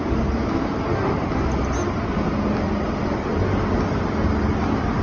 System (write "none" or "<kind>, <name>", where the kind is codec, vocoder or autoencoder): none